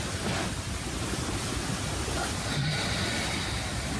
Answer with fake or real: real